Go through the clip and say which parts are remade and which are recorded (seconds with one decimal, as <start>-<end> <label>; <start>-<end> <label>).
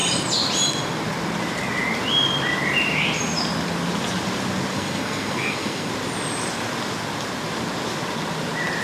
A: 0.0-4.7 recorded; 4.7-5.9 remade; 5.9-8.8 recorded